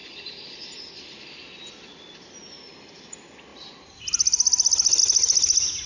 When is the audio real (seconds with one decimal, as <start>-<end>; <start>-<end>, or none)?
0.0-5.9